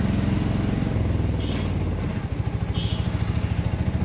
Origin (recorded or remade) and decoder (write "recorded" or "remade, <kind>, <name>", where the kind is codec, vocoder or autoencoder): recorded